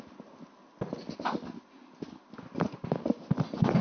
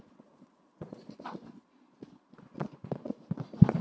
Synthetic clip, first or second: second